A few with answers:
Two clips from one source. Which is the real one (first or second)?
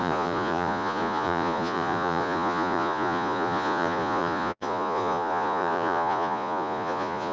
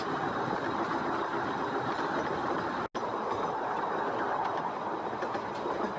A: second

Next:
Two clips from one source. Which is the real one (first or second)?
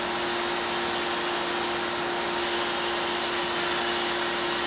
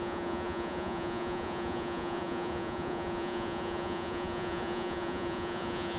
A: first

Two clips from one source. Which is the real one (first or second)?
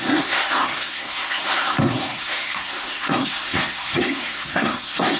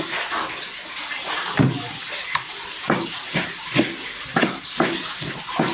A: second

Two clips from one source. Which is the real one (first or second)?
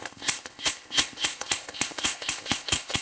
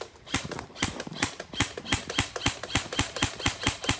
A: second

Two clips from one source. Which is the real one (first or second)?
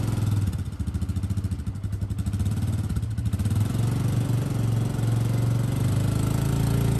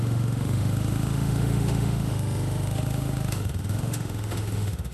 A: first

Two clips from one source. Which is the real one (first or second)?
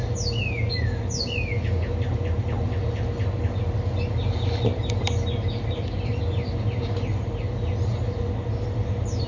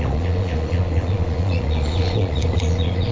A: first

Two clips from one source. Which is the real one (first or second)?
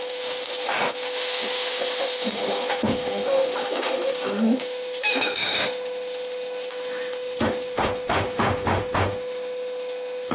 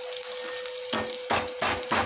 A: second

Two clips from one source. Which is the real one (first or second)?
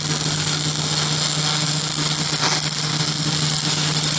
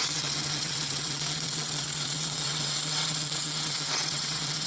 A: first